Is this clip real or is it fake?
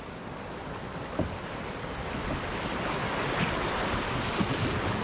real